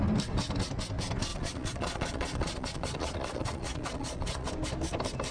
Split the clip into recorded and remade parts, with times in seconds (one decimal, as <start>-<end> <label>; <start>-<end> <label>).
0.0-1.3 recorded; 1.3-4.5 remade; 4.5-5.3 recorded